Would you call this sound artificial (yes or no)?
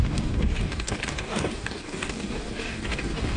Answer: yes